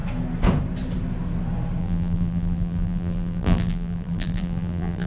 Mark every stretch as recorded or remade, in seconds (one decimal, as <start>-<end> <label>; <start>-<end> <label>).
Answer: 0.0-1.8 recorded; 1.8-5.1 remade